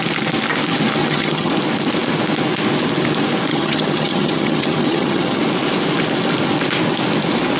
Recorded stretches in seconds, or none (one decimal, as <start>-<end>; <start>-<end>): 0.0-1.0; 1.5-3.5; 5.4-7.6